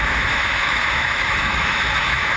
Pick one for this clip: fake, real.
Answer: fake